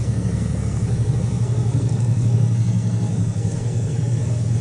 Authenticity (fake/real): fake